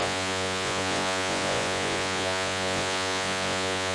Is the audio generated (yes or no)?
yes